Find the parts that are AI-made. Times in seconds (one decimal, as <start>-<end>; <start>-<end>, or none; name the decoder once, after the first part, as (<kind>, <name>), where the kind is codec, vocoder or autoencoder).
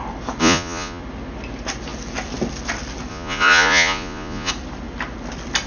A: 0.4-1.0 (vocoder, Vocos); 3.1-4.5